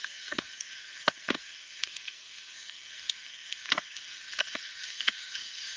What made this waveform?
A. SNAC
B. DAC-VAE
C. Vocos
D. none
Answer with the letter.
A